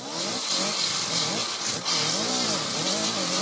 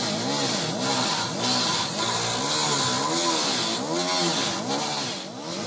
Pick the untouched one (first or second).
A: second